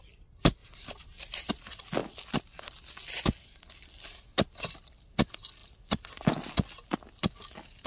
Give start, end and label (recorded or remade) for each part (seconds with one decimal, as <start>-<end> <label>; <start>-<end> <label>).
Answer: 0.0-0.6 recorded; 0.6-1.5 remade; 1.5-7.9 recorded